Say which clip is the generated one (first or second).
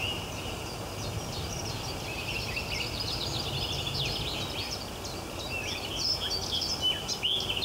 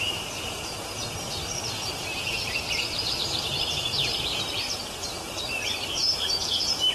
second